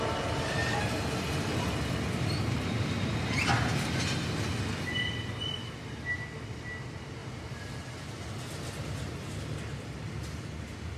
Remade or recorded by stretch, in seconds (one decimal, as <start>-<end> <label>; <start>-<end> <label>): 0.0-11.0 recorded